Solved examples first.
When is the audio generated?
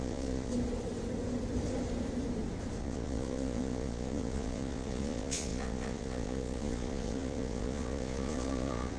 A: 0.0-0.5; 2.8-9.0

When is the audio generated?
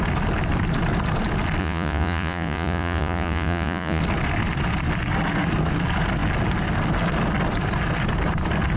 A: 1.6-4.0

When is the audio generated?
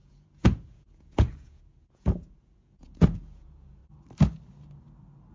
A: 0.0-3.8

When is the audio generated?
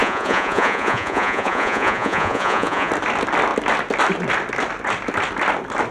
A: 0.0-2.9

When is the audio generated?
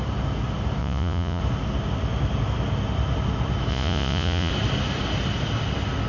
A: 0.8-1.4; 3.7-4.5